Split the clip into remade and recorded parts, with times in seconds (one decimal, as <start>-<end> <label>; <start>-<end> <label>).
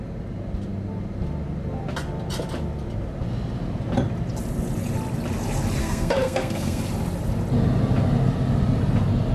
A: 0.0-5.8 recorded; 5.8-6.8 remade; 6.8-9.3 recorded